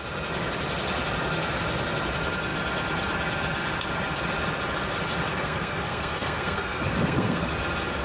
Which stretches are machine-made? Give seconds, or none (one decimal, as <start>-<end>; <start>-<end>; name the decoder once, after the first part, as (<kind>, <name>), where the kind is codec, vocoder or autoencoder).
5.3-7.5 (codec, SNAC)

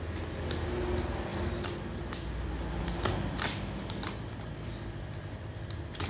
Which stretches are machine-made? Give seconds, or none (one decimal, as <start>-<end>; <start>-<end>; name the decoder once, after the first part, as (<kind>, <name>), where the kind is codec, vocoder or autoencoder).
none

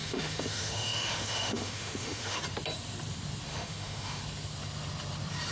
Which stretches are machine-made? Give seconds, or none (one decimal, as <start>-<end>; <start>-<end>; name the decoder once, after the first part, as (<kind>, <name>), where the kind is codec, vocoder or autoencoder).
0.0-2.4 (autoencoder, DAC-VAE); 3.5-4.2

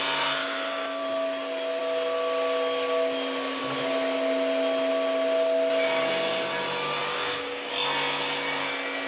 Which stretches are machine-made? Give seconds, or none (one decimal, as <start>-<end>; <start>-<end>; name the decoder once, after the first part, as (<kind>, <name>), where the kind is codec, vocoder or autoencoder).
0.4-1.0 (codec, DAC); 7.0-7.7

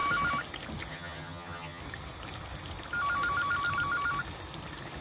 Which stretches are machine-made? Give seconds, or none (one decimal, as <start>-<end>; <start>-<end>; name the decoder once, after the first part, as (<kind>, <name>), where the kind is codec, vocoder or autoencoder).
0.9-1.8 (vocoder, HiFi-GAN)

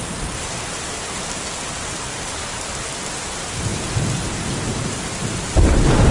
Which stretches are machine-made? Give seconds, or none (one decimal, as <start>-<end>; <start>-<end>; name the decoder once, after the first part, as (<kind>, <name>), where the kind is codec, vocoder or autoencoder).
none

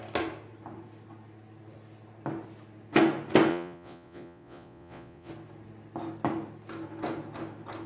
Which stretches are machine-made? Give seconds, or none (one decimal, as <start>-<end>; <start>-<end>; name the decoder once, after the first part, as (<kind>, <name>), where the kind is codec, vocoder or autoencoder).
3.5-5.3 (vocoder, Vocos)